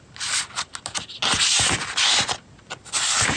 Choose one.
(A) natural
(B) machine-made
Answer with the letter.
A